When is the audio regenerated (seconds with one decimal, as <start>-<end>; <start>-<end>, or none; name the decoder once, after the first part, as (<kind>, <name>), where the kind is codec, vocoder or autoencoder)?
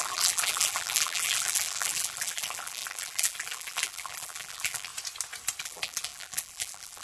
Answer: 0.0-4.9 (vocoder, BigVGAN v2); 5.6-7.0